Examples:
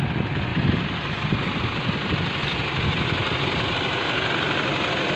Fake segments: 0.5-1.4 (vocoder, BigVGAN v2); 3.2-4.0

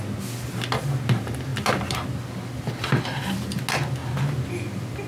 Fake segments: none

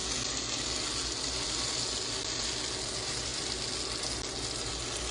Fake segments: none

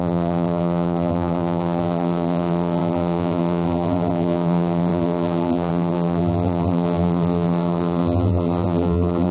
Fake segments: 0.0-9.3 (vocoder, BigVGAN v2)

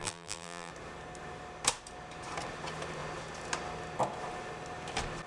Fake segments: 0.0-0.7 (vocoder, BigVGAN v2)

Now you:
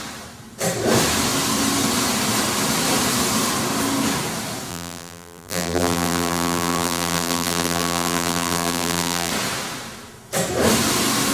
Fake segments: 4.7-9.3 (vocoder, BigVGAN v2)

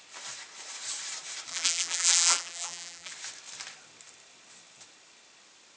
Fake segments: 1.5-3.1 (vocoder, BigVGAN v2)